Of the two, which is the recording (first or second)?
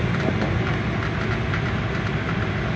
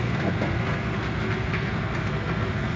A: first